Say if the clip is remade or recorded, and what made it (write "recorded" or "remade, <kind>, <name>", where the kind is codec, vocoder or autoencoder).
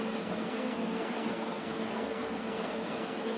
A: remade, codec, SNAC